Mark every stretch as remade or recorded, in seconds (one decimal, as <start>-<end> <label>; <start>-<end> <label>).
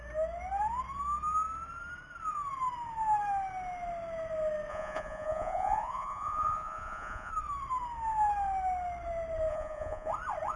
0.0-4.7 recorded; 4.7-7.3 remade; 7.3-9.5 recorded; 9.5-10.1 remade; 10.1-10.6 recorded